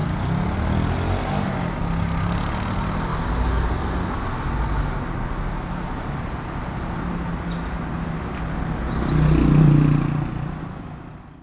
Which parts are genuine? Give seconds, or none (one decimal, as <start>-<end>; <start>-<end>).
0.0-11.4